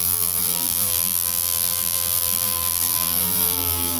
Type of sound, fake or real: fake